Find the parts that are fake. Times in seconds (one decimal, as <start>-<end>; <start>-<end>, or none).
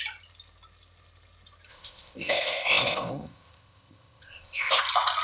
1.7-4.8